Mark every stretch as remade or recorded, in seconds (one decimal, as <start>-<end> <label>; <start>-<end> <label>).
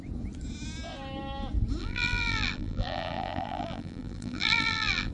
0.0-1.8 recorded; 1.8-5.1 remade